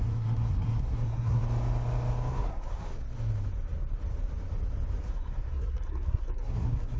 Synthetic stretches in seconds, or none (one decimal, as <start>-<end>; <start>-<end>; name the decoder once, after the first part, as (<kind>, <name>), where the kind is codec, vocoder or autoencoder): 0.0-1.4 (codec, SNAC); 2.3-2.9; 5.0-7.0